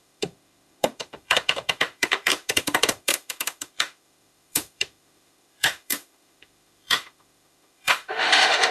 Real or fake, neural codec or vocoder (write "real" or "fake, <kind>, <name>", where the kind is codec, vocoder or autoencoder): fake, autoencoder, DAC-VAE